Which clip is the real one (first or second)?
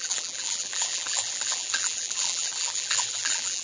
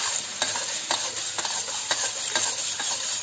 second